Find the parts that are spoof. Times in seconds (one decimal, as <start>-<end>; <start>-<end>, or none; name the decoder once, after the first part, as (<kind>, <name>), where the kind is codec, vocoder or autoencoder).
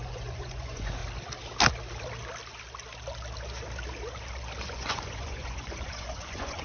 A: 0.0-1.0 (vocoder, Vocos); 4.7-6.6